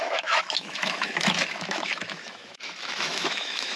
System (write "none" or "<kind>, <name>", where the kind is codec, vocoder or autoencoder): autoencoder, DAC-VAE